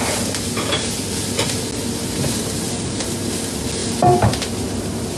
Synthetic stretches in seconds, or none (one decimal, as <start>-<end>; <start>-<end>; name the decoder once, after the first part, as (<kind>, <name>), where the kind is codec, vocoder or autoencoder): 3.8-5.2 (vocoder, BigVGAN v2)